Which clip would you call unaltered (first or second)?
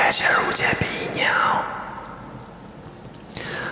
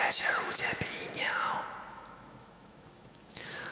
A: first